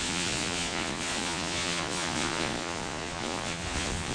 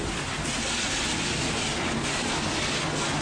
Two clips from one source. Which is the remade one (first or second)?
first